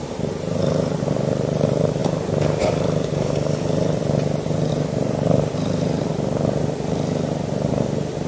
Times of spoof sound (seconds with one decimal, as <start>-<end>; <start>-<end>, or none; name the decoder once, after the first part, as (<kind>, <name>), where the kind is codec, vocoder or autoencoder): 0.0-2.0 (vocoder, BigVGAN v2); 4.7-6.1; 7.7-8.3